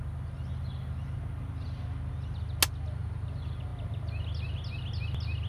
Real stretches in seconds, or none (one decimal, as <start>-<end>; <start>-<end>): 0.0-5.5